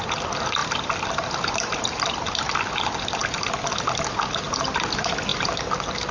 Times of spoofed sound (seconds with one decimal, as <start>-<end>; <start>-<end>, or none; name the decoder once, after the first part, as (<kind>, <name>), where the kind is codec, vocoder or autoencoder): 0.6-1.3 (vocoder, BigVGAN v2); 5.3-6.1